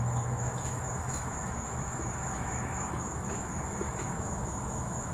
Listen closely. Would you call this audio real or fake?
fake